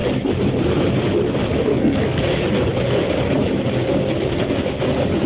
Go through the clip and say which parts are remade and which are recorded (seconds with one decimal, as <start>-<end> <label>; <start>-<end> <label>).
0.0-1.7 recorded; 1.7-2.2 remade; 2.2-5.3 recorded